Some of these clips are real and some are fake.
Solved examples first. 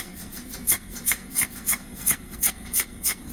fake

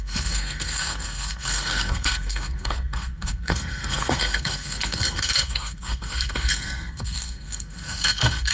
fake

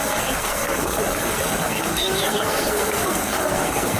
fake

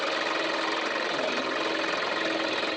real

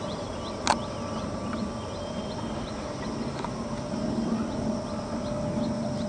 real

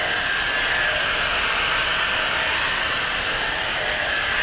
real